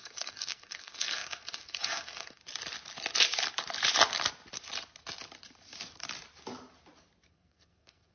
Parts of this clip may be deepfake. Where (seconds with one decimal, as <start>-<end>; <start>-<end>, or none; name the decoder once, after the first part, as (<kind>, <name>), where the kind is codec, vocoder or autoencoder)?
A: 0.0-2.4 (codec, SNAC); 7.3-8.1